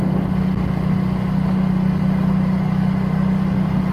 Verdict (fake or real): real